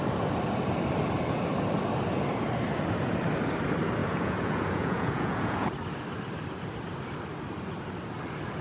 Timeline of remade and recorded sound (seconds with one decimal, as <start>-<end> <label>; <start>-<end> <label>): 0.0-4.0 recorded; 4.0-5.7 remade; 5.7-8.6 recorded